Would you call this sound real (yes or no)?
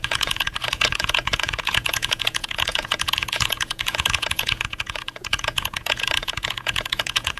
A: no